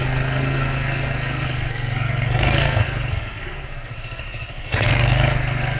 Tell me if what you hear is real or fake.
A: fake